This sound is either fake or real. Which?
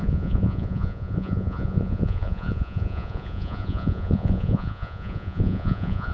fake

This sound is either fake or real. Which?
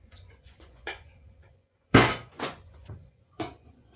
fake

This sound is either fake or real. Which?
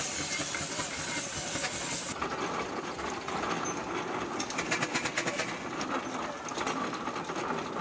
real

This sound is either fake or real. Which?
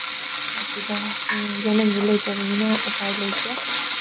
real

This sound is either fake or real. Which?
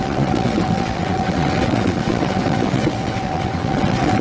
fake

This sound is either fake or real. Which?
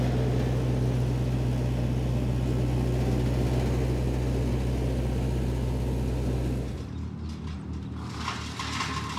real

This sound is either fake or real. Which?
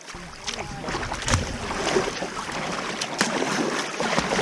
real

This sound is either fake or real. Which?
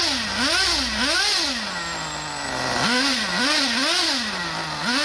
real